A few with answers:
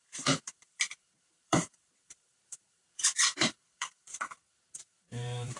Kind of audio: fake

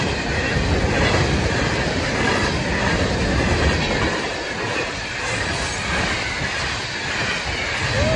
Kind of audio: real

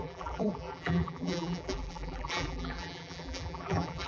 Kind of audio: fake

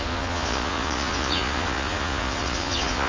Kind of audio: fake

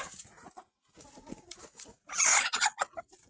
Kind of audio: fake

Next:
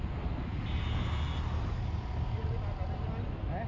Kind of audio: real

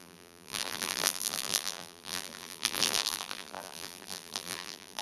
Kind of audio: fake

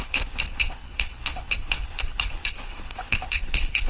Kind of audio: fake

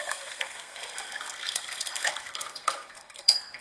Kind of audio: fake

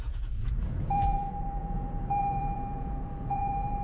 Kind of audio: fake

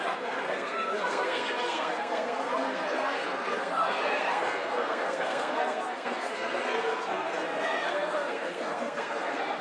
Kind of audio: fake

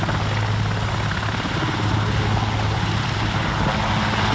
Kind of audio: real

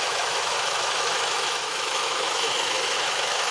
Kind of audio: fake